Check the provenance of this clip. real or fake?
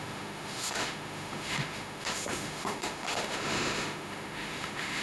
fake